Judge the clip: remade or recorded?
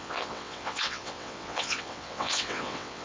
remade